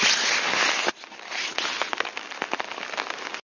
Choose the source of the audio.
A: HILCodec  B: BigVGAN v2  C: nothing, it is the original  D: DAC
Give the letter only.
C